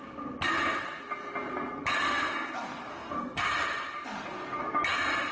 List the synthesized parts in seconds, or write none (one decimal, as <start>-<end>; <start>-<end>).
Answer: 2.0-2.5; 2.9-3.5